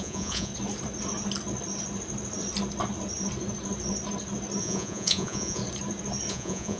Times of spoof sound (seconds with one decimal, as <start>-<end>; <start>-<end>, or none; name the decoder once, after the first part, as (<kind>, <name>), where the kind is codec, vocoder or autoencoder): 0.0-0.5 (vocoder, Vocos); 4.6-5.6; 6.3-6.8